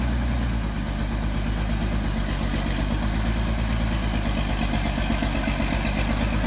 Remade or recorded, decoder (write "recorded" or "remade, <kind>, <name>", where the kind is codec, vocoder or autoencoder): recorded